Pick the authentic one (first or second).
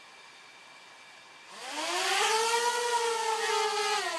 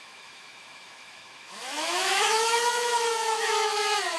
first